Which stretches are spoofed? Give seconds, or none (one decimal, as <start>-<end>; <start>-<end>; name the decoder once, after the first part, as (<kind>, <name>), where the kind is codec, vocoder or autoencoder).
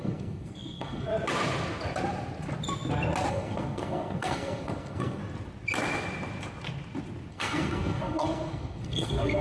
0.0-1.1 (codec, SNAC); 3.3-5.2; 7.3-9.4